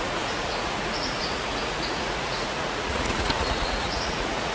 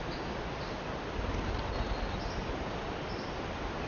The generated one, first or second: first